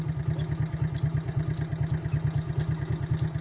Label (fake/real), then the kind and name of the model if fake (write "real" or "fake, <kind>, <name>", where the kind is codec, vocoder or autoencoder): real